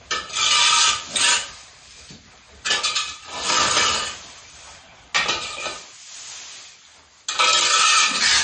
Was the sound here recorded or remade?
recorded